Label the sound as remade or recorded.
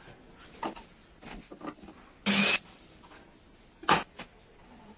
recorded